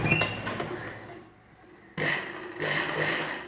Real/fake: real